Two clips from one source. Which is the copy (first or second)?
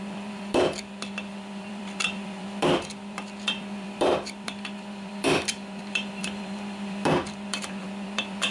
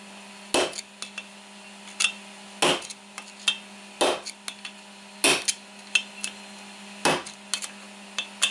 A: first